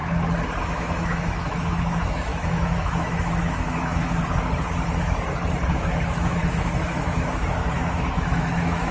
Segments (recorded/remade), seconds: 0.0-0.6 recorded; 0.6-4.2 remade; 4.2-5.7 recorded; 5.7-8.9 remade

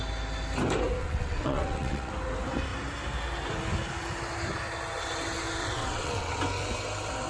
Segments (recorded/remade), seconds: 0.0-1.0 recorded; 1.0-2.1 remade; 2.1-5.6 recorded; 5.6-6.4 remade; 6.4-7.3 recorded

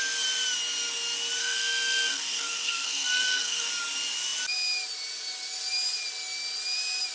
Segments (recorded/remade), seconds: 0.0-1.4 recorded; 1.4-3.7 remade; 3.7-7.1 recorded

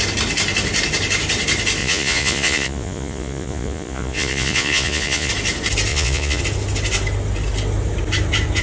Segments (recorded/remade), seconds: 0.0-1.8 recorded; 1.8-5.3 remade; 5.3-5.9 recorded; 5.9-6.4 remade; 6.4-8.6 recorded